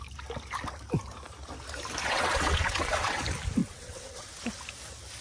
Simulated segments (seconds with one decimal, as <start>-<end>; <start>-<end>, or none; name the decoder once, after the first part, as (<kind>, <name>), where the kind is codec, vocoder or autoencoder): 2.0-3.2 (vocoder, WaveNeXt); 3.6-4.3